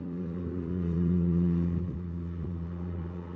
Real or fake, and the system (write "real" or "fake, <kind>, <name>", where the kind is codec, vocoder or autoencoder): fake, vocoder, Vocos